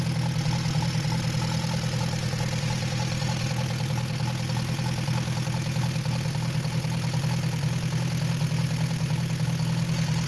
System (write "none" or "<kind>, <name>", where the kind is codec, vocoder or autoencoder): none